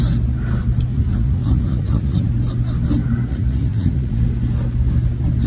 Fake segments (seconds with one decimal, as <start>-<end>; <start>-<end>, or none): 0.9-2.3; 3.3-4.2